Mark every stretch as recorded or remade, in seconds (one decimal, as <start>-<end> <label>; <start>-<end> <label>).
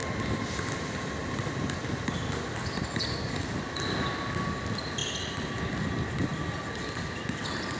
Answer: 0.0-7.8 recorded